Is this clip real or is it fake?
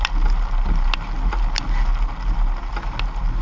real